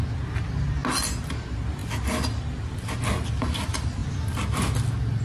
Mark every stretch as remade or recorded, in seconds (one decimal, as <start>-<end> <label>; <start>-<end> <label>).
0.0-5.2 recorded